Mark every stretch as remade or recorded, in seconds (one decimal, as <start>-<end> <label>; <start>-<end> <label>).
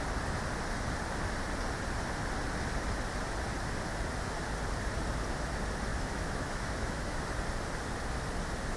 0.0-5.9 recorded; 5.9-7.2 remade; 7.2-8.8 recorded